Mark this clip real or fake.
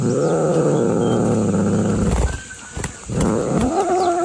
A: real